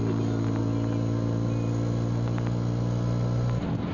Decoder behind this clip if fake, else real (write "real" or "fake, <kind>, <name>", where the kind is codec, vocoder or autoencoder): real